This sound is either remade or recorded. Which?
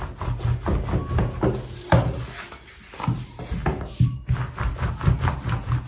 recorded